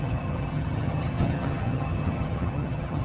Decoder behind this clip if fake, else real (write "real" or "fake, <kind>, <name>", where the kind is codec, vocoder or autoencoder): fake, vocoder, HiFi-GAN